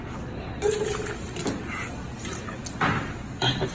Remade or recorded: recorded